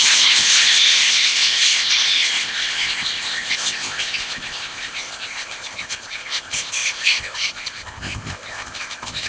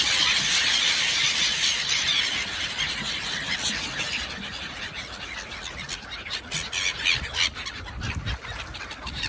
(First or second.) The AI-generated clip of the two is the first